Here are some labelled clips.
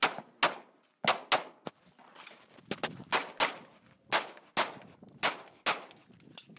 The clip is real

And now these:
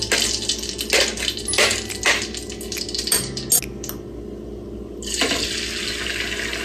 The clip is real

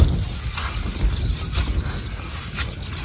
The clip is real